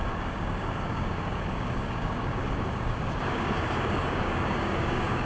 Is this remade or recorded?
remade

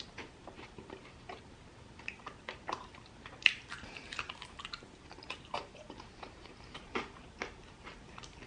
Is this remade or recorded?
remade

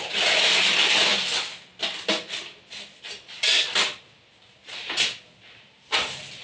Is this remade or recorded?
recorded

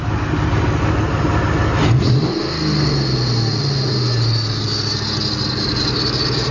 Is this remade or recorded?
recorded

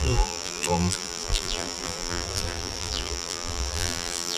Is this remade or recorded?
remade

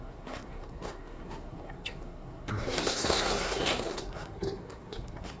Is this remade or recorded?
remade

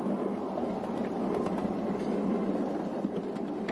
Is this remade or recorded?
recorded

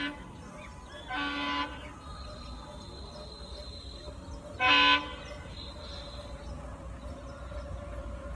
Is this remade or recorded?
recorded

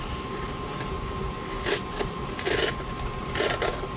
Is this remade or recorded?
recorded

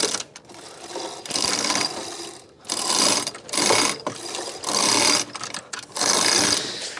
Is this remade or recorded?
recorded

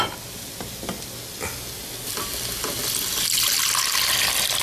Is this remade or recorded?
recorded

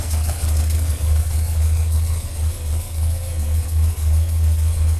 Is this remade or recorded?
remade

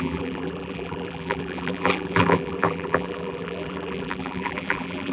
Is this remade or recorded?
remade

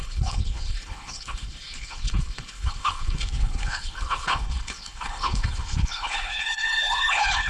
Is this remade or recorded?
remade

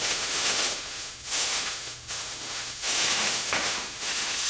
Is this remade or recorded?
remade